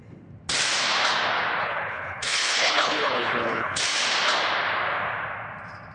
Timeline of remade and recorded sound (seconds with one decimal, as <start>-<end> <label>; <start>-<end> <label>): 0.0-1.6 recorded; 1.6-3.8 remade; 3.8-5.9 recorded